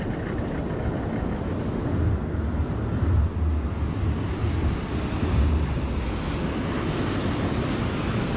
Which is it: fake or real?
real